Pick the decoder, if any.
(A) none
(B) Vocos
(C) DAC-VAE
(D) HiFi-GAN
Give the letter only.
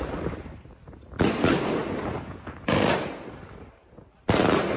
A